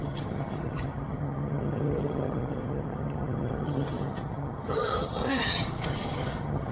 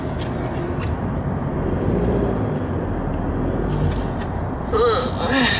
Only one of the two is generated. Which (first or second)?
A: first